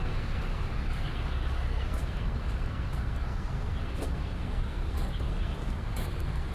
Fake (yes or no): yes